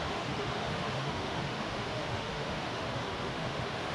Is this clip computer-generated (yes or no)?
yes